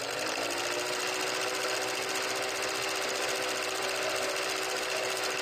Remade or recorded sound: recorded